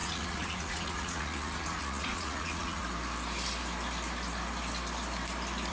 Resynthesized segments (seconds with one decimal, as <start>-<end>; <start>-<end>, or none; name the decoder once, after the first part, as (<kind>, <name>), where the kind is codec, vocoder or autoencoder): 0.0-2.8 (vocoder, Vocos)